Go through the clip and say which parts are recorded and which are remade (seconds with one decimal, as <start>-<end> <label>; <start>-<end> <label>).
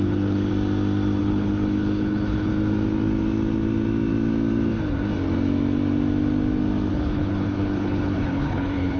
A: 0.0-0.5 remade; 0.5-1.2 recorded; 1.2-2.5 remade; 2.5-6.9 recorded; 6.9-9.0 remade